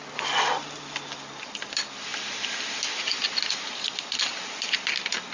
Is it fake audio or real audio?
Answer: real